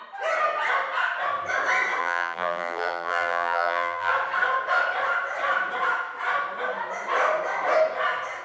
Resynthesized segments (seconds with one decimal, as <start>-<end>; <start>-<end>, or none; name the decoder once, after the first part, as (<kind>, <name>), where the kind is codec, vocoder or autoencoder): 2.0-4.1 (vocoder, BigVGAN v2)